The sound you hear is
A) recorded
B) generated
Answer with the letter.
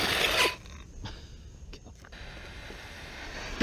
A